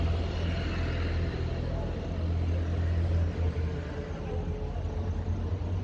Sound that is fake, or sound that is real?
real